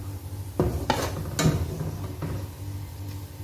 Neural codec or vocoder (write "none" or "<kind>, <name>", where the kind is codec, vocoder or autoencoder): none